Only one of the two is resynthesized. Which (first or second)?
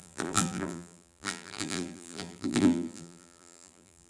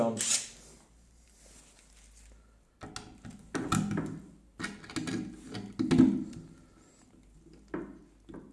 first